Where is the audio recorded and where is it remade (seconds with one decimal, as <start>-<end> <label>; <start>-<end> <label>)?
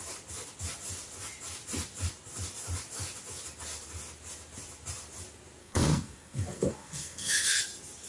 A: 0.0-5.6 recorded; 5.6-7.6 remade; 7.6-8.1 recorded